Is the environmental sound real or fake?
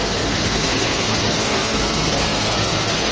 fake